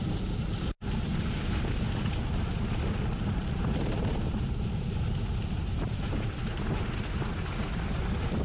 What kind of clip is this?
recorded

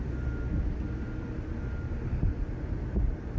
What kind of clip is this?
recorded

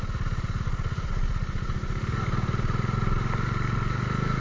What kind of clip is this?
recorded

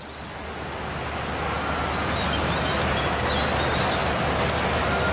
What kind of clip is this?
recorded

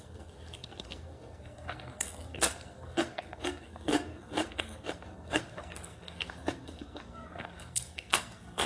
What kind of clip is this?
remade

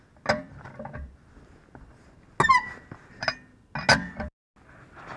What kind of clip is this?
recorded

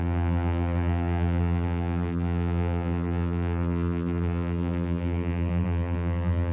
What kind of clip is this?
remade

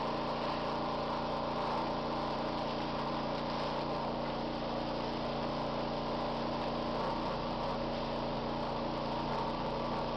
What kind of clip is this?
recorded